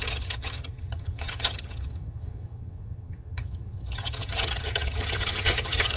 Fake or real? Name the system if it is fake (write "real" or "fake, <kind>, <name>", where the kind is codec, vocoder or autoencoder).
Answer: fake, vocoder, HiFi-GAN